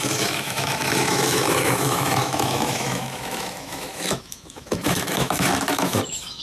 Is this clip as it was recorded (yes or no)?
no